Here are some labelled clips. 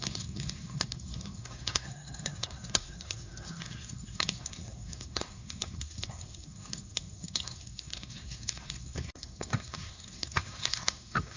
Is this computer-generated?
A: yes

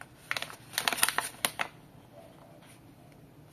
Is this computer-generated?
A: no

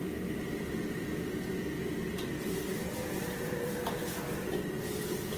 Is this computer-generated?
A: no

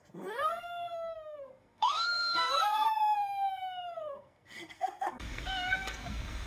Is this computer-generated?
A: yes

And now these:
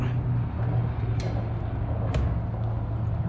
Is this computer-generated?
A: no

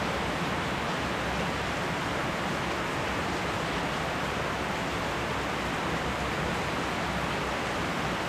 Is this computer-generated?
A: no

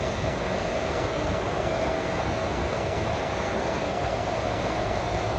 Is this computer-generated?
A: yes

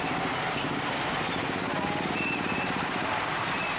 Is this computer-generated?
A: no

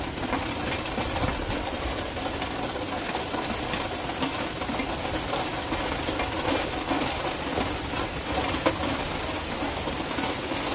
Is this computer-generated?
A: no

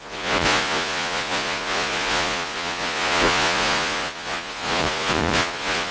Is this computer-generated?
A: yes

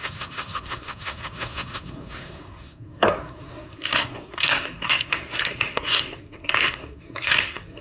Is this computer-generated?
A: yes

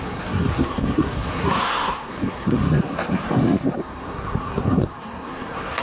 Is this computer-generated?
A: yes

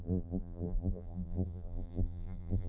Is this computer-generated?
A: yes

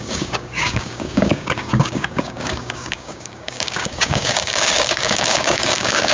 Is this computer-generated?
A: yes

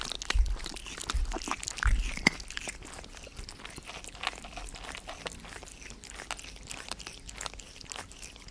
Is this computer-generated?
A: no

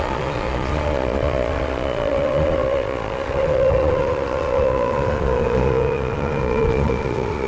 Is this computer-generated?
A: yes